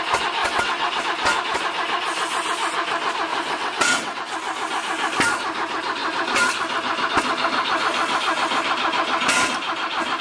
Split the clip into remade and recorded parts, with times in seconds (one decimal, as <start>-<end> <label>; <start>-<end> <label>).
0.0-0.4 recorded; 0.4-1.0 remade; 1.0-3.3 recorded; 3.3-4.2 remade; 4.2-10.2 recorded